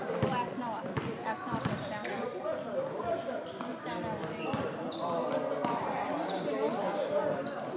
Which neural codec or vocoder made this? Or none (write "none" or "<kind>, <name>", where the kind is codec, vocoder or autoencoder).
none